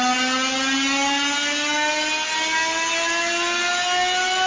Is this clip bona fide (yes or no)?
yes